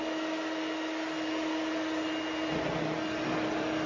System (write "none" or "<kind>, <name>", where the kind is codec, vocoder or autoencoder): none